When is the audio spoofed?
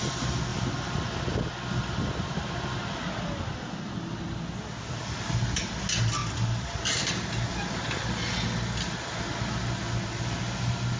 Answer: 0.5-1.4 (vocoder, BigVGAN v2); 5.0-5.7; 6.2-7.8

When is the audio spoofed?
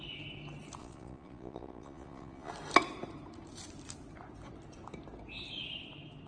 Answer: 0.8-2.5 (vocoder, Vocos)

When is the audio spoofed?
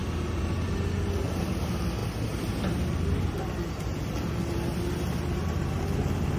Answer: none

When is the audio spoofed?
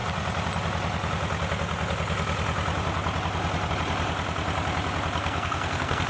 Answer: 5.2-6.1 (codec, SNAC)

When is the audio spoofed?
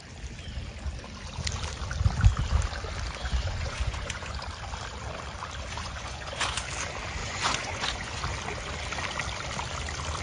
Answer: 3.2-4.4 (vocoder, Vocos); 5.8-6.6; 7.2-8.2